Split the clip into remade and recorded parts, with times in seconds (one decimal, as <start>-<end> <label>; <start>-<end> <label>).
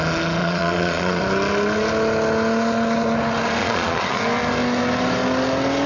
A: 0.0-0.4 recorded; 0.4-1.2 remade; 1.2-3.6 recorded; 3.6-4.2 remade; 4.2-5.9 recorded